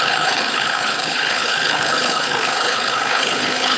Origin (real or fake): fake